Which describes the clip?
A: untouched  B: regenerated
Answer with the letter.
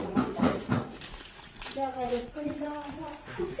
B